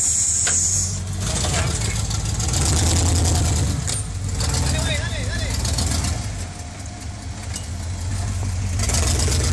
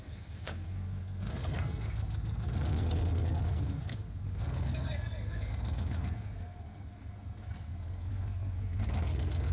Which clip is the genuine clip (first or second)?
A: first